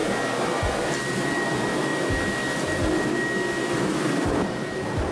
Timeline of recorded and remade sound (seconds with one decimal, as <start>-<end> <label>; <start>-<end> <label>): 0.0-1.9 remade; 1.9-3.6 recorded; 3.6-5.1 remade